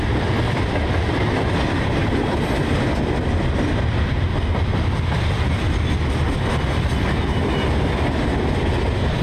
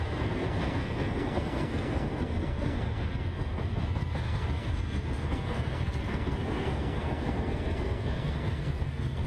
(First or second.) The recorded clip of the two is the first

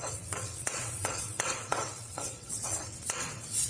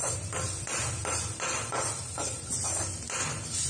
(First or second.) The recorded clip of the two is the second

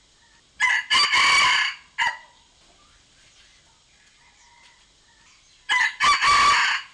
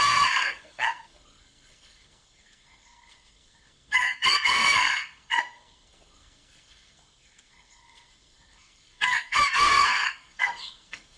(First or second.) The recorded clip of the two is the first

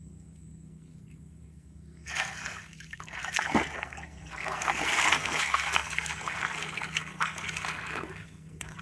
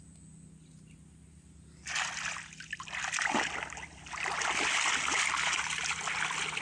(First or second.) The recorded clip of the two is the second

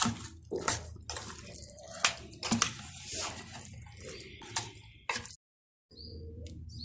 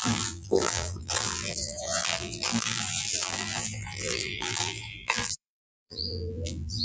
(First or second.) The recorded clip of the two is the first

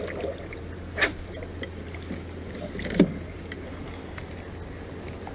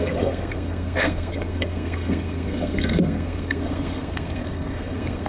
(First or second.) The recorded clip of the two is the first